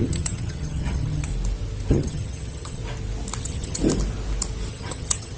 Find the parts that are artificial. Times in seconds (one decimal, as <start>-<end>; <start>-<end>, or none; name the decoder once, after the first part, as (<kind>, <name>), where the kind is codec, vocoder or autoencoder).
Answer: 0.0-1.3 (vocoder, HiFi-GAN); 1.9-2.8; 3.4-3.8; 4.7-5.4